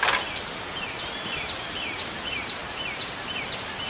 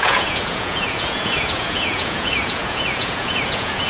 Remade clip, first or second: second